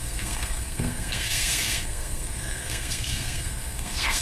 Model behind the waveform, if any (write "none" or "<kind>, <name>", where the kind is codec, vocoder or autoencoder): codec, SNAC